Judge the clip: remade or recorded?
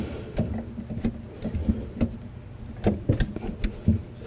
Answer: recorded